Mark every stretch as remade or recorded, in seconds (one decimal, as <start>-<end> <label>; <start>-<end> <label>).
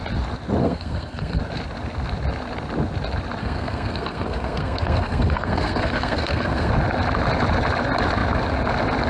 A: 0.0-0.6 recorded; 0.6-1.4 remade; 1.4-3.4 recorded; 3.4-6.7 remade; 6.7-9.1 recorded